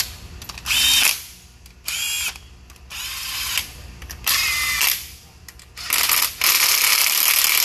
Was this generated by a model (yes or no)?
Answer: no